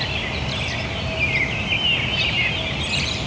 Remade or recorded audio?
recorded